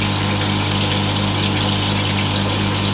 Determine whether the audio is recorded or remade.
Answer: recorded